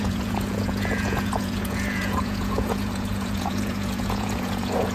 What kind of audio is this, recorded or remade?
remade